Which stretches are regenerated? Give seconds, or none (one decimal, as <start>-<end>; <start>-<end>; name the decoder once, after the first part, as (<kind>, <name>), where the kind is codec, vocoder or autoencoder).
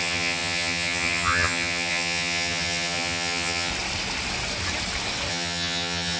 0.0-3.7 (vocoder, HiFi-GAN); 5.3-6.2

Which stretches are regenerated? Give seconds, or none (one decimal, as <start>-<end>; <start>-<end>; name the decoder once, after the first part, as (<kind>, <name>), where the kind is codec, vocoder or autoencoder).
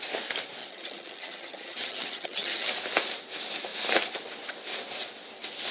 0.6-2.7 (vocoder, HiFi-GAN)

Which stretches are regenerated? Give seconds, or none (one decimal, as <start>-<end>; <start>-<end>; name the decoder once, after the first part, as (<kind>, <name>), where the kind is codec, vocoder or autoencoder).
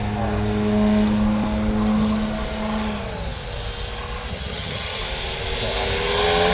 4.3-5.0 (vocoder, HiFi-GAN)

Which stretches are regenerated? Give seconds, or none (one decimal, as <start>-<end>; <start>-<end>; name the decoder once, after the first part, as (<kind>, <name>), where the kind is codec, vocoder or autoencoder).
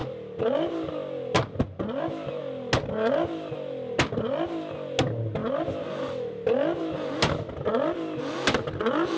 none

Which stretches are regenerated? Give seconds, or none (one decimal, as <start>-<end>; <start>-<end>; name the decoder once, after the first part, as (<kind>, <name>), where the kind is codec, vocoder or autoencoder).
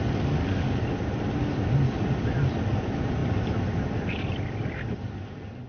none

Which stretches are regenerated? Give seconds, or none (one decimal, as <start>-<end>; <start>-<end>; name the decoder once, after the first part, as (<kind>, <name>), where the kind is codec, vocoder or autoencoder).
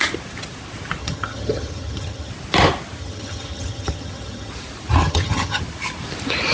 1.0-2.3 (vocoder, HiFi-GAN); 3.0-4.5; 5.0-5.6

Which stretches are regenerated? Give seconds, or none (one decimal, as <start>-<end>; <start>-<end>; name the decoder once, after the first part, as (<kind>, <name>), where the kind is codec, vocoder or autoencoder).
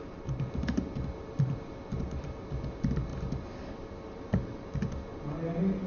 none